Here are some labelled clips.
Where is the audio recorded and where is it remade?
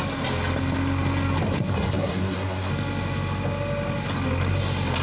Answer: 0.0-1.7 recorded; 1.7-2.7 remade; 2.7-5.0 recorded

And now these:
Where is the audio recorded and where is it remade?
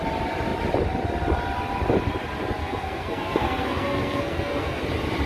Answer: 0.0-2.6 recorded; 2.6-4.8 remade; 4.8-5.3 recorded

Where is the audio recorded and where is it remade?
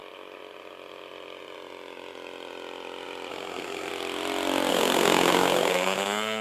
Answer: 0.0-3.3 recorded; 3.3-3.9 remade; 3.9-4.7 recorded; 4.7-6.4 remade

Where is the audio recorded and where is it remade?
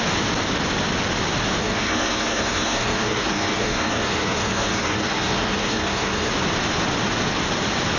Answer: 0.0-1.6 recorded; 1.6-6.3 remade; 6.3-8.0 recorded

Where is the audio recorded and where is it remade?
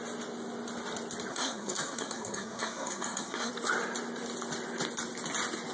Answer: 0.0-1.3 recorded; 1.3-3.5 remade; 3.5-5.7 recorded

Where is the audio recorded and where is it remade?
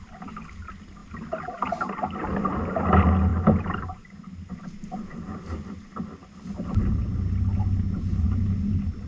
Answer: 0.0-9.1 recorded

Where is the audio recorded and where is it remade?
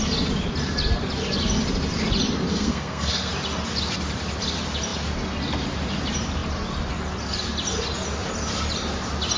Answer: 0.0-2.5 recorded; 2.5-3.3 remade; 3.3-9.4 recorded